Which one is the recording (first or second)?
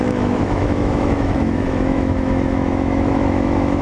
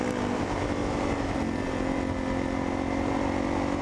second